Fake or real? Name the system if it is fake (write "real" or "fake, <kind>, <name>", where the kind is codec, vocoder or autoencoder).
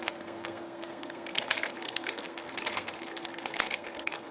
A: fake, codec, SNAC